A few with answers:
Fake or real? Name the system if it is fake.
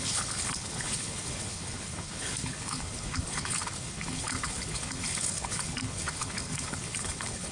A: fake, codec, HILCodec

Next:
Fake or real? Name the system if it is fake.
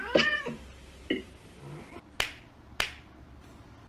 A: real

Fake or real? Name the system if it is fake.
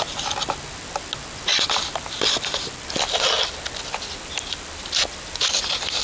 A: real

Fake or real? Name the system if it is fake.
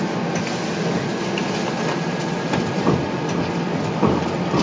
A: real